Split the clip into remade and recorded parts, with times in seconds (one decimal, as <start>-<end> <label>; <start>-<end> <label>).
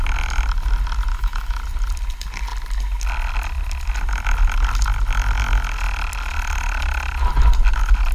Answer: 0.0-1.1 recorded; 1.1-1.6 remade; 1.6-8.1 recorded